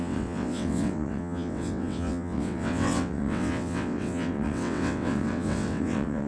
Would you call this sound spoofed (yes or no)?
yes